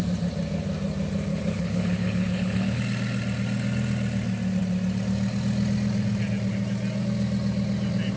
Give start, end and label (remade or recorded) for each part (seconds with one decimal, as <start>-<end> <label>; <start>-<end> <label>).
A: 0.0-1.3 recorded; 1.3-2.8 remade; 2.8-8.2 recorded